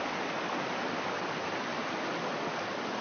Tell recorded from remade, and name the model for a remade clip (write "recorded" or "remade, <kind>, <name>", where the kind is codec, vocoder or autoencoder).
recorded